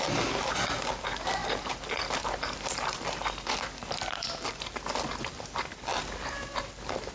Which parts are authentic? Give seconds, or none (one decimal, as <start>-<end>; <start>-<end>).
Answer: none